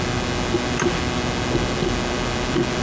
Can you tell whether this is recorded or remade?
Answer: recorded